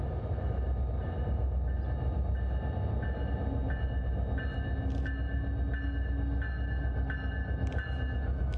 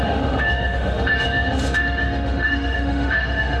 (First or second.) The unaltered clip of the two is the first